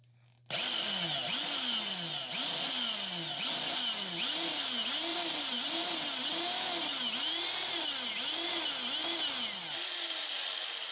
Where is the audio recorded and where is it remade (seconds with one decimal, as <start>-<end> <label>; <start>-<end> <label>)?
0.0-5.1 recorded; 5.1-5.9 remade; 5.9-10.9 recorded